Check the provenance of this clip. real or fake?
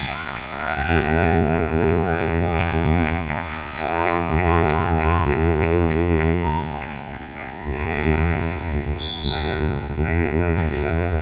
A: fake